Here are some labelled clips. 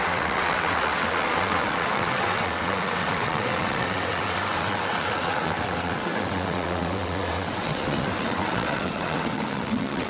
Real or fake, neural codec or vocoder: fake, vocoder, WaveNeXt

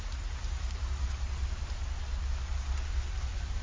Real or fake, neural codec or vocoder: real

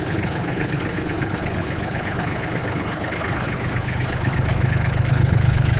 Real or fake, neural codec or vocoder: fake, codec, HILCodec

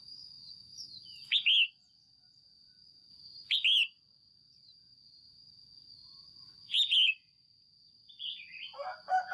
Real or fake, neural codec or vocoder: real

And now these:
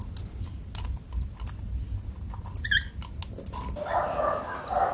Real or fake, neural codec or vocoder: real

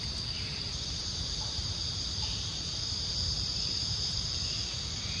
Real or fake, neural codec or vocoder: fake, vocoder, BigVGAN v2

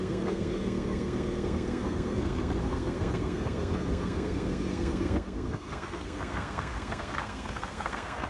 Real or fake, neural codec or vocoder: fake, codec, SNAC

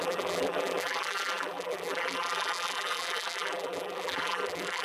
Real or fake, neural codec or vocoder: fake, vocoder, BigVGAN v2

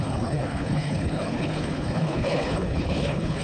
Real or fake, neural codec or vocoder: fake, codec, HILCodec